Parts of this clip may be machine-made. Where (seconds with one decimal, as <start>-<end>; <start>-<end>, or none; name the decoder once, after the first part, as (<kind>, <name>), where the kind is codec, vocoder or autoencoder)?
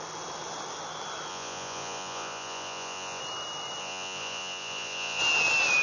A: 1.3-3.2 (vocoder, Vocos); 3.8-5.2